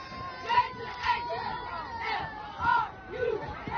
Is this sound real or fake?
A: real